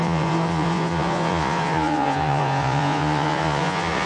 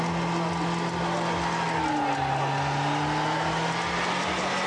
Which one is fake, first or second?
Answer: first